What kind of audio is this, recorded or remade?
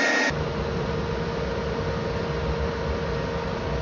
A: recorded